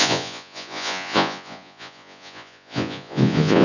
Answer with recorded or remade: remade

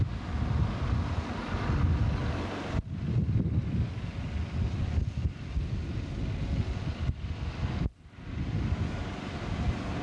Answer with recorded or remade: recorded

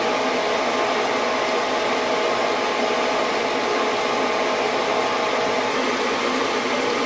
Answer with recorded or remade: recorded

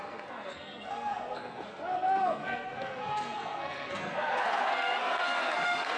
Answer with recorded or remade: remade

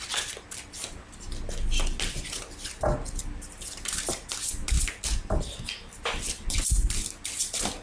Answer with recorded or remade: recorded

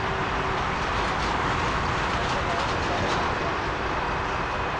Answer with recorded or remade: recorded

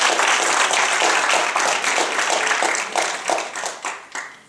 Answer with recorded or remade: recorded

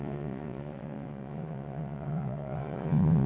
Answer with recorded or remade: remade